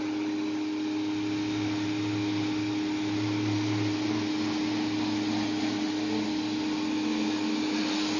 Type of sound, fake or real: real